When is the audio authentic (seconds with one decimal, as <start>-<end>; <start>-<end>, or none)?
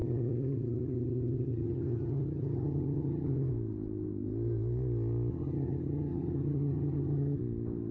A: 3.5-5.3; 7.4-7.9